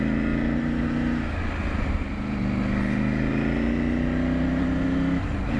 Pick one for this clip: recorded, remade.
recorded